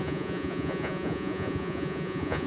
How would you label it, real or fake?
fake